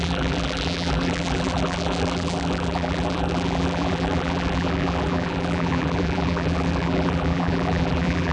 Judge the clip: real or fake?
fake